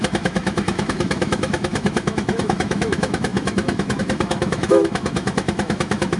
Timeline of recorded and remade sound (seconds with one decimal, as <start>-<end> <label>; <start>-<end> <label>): 0.0-6.2 remade